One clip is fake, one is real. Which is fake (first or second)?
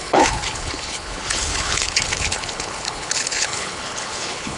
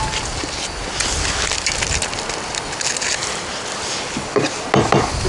first